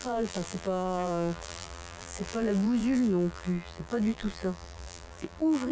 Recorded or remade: remade